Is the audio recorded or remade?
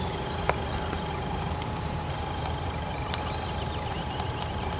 remade